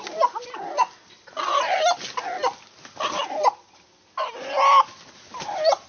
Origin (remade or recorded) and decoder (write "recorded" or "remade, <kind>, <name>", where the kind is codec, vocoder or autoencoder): recorded